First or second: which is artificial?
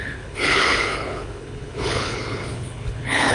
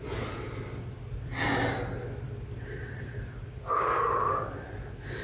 first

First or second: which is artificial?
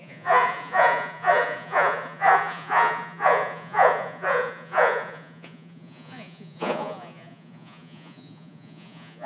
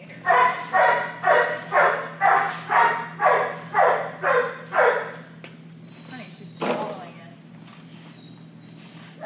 first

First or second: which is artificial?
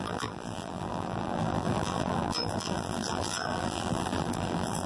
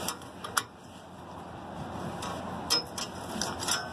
first